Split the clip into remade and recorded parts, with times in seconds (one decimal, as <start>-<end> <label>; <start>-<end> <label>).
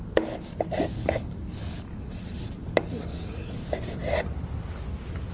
0.0-4.0 remade; 4.0-5.3 recorded